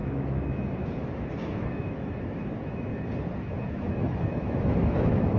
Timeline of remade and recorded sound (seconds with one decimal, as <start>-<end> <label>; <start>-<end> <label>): 0.0-2.9 remade; 2.9-3.7 recorded; 3.7-5.4 remade